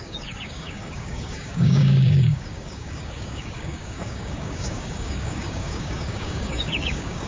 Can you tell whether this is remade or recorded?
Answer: remade